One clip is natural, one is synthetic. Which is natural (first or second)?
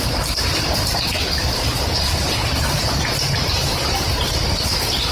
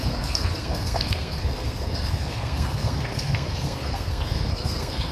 first